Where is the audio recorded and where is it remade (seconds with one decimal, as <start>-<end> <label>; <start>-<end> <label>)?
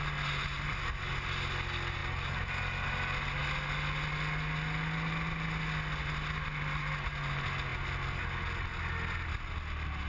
0.0-10.1 recorded